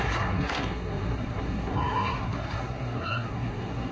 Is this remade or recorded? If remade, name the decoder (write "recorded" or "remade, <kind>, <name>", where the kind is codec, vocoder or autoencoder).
remade, codec, SNAC